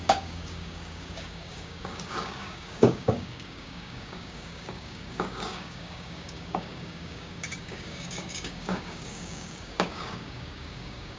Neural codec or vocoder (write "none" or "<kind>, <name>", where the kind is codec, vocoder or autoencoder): codec, DAC